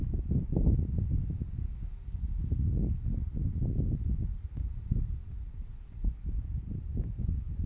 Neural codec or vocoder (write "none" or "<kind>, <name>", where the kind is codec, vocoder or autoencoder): none